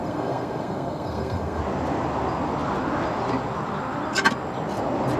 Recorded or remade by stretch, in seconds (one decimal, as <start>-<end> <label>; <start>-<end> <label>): 0.0-1.6 remade; 1.6-5.2 recorded